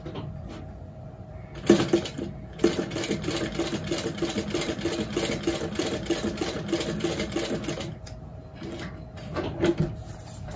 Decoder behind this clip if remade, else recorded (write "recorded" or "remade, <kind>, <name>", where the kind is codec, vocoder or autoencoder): recorded